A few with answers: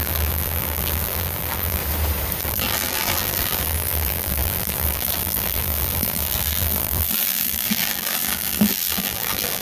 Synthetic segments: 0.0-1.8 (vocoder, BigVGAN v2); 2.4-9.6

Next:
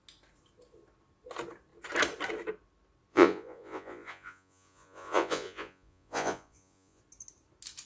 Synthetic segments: 3.1-7.0 (vocoder, Vocos)

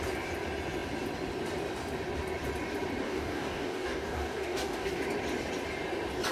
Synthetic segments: 3.0-5.0 (codec, DAC)

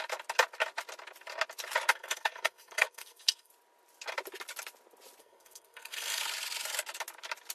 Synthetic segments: 1.9-3.5 (codec, SNAC); 5.2-6.2

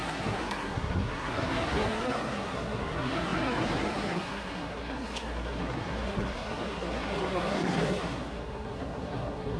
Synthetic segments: 0.0-9.6 (codec, SNAC)

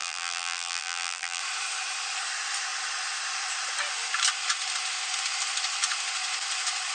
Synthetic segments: 0.0-1.4 (vocoder, BigVGAN v2)

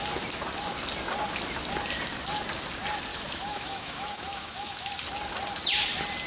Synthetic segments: 3.1-4.9 (autoencoder, DAC-VAE)